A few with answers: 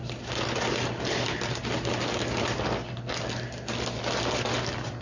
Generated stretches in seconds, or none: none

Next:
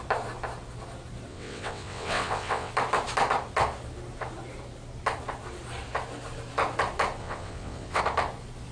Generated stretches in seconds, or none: 1.3-2.7; 7.2-8.0

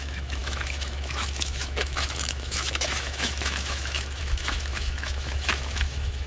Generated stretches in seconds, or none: 0.0-6.3

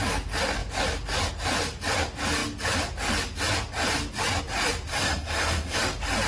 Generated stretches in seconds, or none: 4.9-5.8

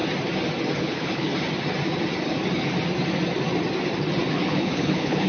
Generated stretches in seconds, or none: 0.8-1.3; 4.3-5.3